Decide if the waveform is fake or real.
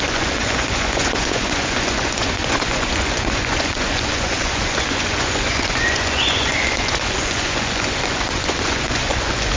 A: fake